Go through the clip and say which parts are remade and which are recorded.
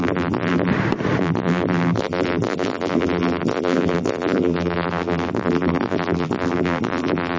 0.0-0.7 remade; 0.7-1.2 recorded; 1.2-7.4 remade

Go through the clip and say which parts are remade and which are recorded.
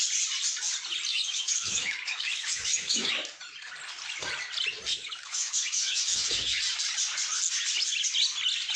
0.0-1.1 recorded; 1.1-3.1 remade; 3.1-4.9 recorded; 4.9-6.6 remade; 6.6-8.8 recorded